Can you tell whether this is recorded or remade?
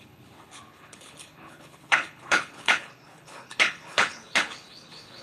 remade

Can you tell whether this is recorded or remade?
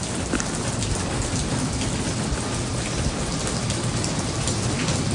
recorded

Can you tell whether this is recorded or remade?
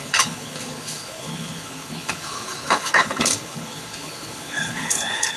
remade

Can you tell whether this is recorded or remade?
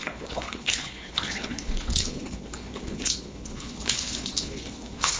remade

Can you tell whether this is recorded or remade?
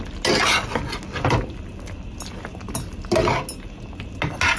recorded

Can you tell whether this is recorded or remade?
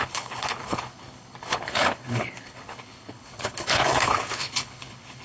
remade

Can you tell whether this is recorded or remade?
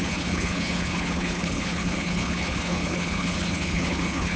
remade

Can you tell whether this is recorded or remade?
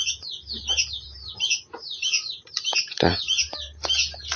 recorded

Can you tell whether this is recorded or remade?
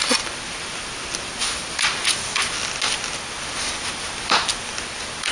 recorded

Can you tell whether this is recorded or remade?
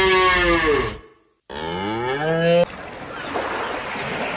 recorded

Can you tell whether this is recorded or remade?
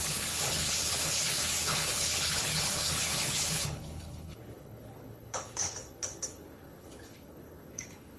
remade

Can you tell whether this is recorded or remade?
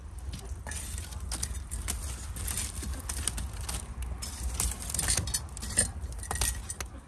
recorded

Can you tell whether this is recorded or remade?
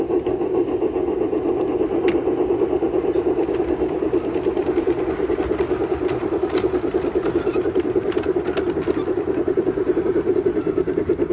recorded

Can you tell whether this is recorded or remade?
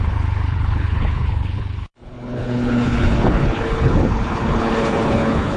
remade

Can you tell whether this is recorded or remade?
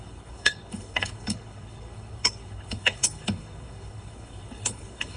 remade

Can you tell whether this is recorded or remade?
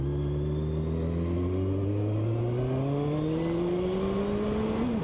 recorded